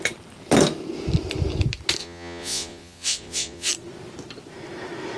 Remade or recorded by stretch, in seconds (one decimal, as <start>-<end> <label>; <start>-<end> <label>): 0.0-2.0 recorded; 2.0-3.7 remade; 3.7-5.2 recorded